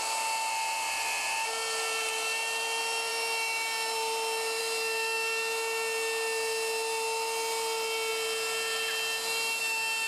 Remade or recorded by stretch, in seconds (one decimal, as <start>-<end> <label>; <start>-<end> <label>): 0.0-10.1 recorded